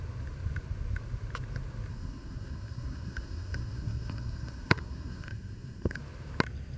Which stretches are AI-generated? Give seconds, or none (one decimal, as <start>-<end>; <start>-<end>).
1.9-6.0